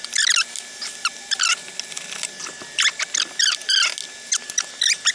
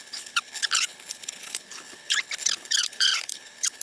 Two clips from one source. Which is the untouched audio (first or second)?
first